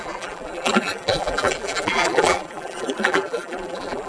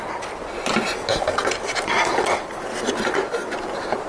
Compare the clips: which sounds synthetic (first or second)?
first